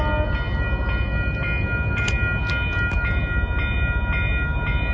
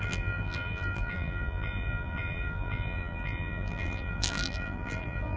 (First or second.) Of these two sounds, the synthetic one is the second